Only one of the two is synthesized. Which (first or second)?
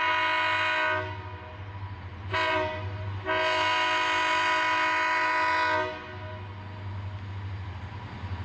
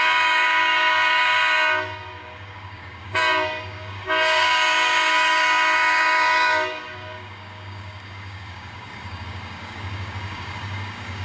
second